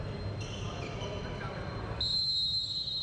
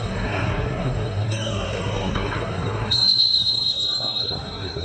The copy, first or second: second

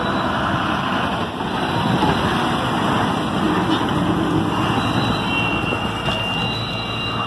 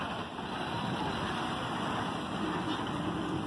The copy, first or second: second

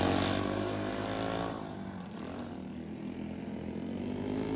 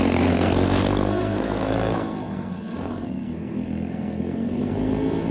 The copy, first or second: second